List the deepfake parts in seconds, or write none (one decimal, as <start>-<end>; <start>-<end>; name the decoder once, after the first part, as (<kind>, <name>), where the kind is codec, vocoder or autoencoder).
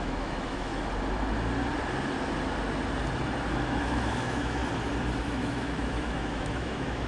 0.0-0.7 (autoencoder, DAC-VAE); 3.5-4.6; 5.2-7.1